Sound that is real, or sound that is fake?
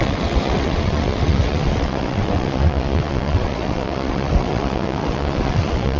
fake